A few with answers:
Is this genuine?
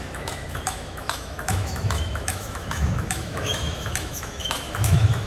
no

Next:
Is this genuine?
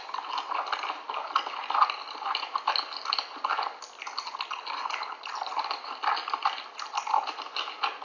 yes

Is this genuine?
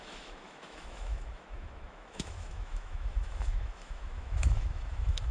no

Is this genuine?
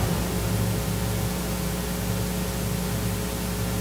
yes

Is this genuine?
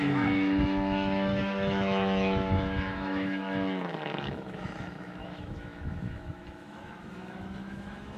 no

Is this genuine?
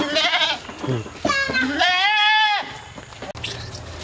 yes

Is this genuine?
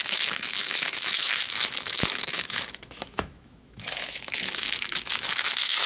no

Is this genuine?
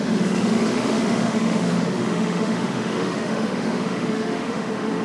no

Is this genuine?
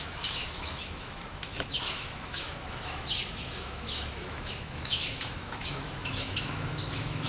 no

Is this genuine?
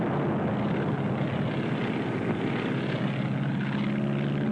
yes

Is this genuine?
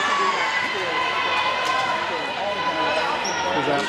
yes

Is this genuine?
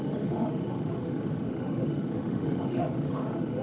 no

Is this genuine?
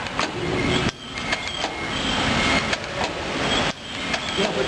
yes